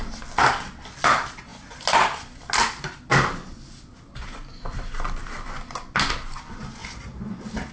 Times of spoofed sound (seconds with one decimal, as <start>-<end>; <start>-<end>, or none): none